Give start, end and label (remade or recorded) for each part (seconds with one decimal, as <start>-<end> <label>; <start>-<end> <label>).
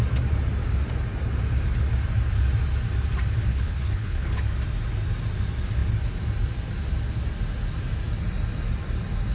0.0-3.5 recorded; 3.5-4.4 remade; 4.4-9.3 recorded